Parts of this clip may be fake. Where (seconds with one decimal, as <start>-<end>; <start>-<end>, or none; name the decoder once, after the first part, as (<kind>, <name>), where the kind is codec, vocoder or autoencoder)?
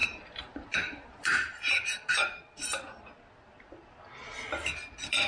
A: 0.0-2.1 (vocoder, BigVGAN v2)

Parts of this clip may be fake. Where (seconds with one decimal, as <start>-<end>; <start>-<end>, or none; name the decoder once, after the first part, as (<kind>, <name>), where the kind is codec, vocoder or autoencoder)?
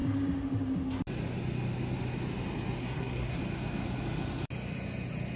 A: 2.8-3.4 (codec, SNAC)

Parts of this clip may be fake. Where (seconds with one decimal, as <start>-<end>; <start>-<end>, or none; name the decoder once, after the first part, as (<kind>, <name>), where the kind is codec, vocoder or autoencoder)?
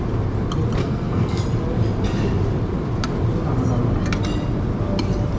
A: 0.8-1.4 (codec, SNAC)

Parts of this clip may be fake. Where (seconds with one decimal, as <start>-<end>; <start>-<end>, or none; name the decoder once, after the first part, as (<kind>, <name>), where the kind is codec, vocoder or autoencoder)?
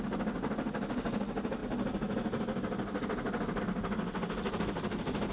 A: none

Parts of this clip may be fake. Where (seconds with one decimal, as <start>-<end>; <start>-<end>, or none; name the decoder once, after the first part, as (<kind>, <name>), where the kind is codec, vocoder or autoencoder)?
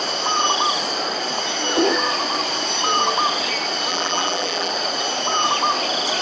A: 3.9-4.7 (vocoder, BigVGAN v2)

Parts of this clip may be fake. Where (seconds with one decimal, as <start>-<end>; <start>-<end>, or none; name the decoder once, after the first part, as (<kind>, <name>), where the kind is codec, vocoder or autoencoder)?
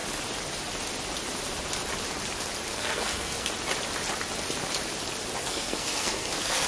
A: 2.7-3.5 (codec, SNAC); 5.4-6.7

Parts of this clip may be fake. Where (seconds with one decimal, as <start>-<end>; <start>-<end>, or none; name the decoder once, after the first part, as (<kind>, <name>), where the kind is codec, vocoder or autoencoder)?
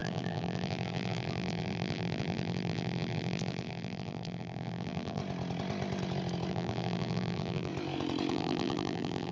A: 0.0-5.2 (vocoder, BigVGAN v2); 6.5-7.7; 8.3-9.3